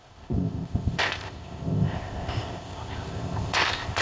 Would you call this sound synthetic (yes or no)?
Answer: yes